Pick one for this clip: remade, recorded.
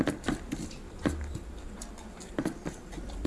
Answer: remade